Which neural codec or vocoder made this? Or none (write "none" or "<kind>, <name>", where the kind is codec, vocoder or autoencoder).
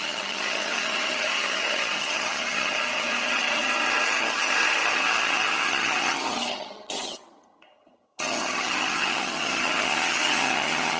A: vocoder, HiFi-GAN